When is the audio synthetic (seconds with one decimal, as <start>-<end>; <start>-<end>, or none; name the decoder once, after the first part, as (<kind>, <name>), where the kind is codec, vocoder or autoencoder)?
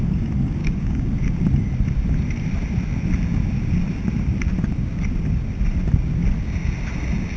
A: 0.6-1.1 (codec, DAC)